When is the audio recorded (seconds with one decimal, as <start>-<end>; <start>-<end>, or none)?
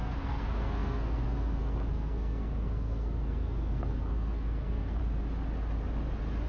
5.0-6.5